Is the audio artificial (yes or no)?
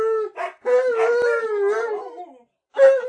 no